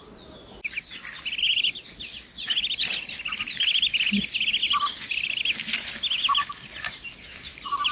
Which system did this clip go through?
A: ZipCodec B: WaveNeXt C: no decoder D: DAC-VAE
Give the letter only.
C